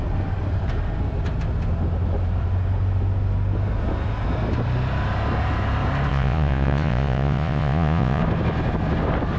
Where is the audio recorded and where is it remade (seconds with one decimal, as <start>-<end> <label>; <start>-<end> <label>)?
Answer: 0.0-6.1 recorded; 6.1-8.2 remade; 8.2-9.4 recorded